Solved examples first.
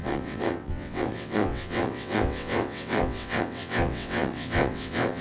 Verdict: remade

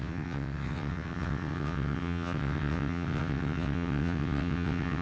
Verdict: remade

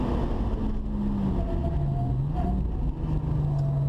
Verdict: recorded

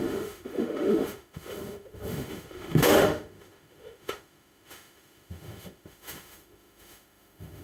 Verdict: remade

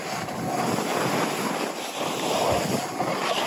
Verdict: recorded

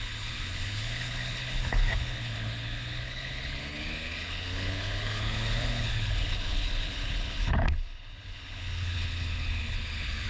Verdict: remade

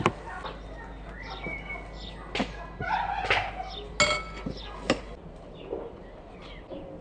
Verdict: recorded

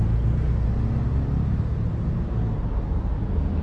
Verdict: recorded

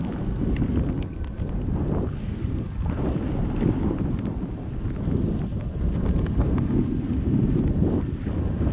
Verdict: recorded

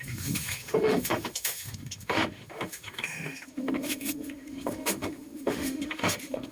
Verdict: remade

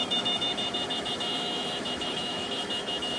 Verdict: remade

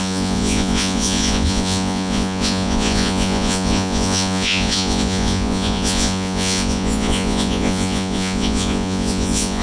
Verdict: remade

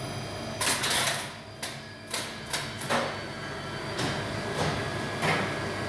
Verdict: recorded